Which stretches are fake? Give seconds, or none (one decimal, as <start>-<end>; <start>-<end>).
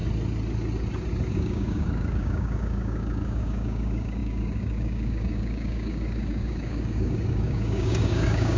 1.3-8.6